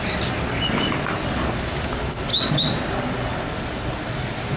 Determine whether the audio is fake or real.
real